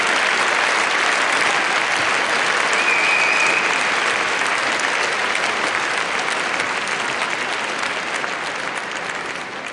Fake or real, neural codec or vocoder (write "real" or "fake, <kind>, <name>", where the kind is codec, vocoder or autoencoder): real